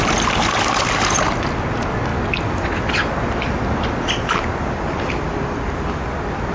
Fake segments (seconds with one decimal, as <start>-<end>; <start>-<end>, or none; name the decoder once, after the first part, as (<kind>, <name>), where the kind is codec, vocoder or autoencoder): 2.1-6.0 (vocoder, BigVGAN v2)